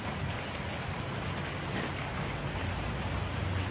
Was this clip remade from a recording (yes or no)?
no